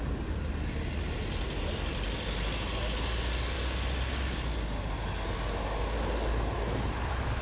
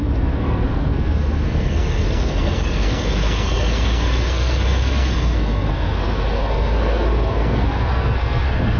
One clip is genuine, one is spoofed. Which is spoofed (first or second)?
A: second